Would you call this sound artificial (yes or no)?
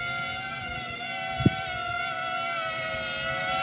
no